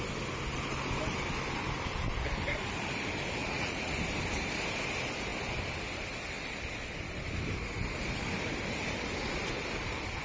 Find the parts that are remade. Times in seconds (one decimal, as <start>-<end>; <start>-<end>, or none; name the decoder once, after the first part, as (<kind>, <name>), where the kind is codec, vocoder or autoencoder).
3.4-3.9 (vocoder, Vocos)